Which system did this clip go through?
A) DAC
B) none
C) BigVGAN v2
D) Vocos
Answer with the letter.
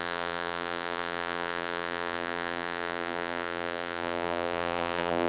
C